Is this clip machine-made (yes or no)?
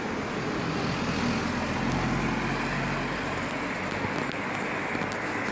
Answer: no